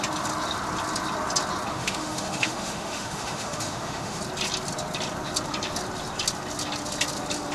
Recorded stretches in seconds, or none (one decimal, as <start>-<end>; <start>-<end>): 0.0-1.7; 4.2-7.5